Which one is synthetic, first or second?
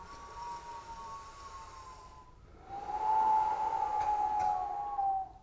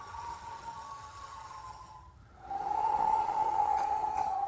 second